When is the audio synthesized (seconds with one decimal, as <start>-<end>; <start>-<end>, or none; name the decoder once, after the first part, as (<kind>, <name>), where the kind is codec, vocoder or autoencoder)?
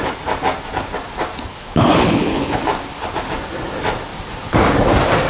1.5-2.6 (codec, HILCodec)